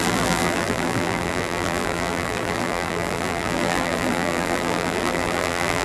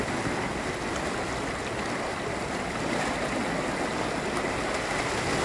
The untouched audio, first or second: second